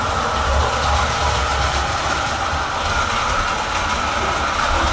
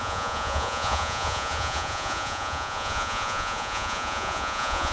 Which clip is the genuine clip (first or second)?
first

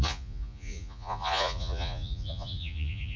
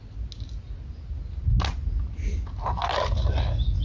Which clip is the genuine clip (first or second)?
second